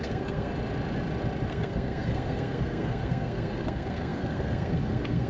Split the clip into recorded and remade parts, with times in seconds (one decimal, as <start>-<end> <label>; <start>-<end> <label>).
0.0-0.5 remade; 0.5-1.5 recorded; 1.5-5.3 remade